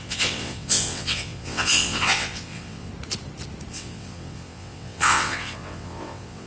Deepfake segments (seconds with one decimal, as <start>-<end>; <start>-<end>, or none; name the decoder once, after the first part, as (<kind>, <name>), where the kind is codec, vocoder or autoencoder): 0.0-2.9 (vocoder, WaveNeXt); 3.7-6.5